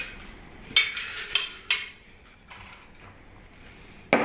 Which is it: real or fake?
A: real